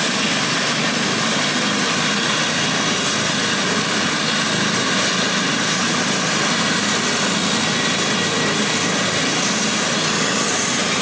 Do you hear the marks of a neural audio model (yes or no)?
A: no